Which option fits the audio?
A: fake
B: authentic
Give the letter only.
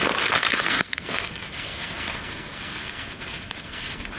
A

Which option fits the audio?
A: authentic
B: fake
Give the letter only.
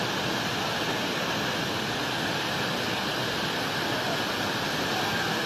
A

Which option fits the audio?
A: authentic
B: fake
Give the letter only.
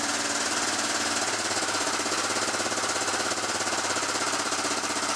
A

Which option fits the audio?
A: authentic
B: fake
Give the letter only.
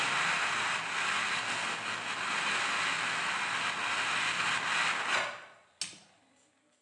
A